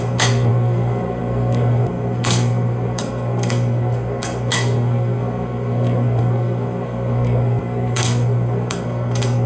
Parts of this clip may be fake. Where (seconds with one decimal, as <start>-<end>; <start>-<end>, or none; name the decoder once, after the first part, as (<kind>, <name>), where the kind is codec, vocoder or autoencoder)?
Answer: 0.0-9.5 (codec, SNAC)